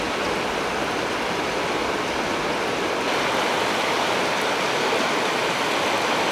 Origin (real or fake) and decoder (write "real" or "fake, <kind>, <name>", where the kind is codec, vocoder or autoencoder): real